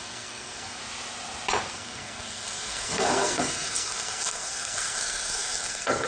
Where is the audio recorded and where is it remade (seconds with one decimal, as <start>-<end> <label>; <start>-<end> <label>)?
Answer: 0.0-0.8 remade; 0.8-1.7 recorded; 1.7-6.1 remade